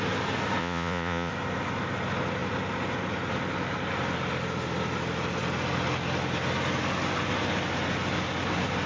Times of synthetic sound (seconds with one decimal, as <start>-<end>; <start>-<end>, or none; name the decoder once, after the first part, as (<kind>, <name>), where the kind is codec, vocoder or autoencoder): 0.6-1.3 (vocoder, Vocos)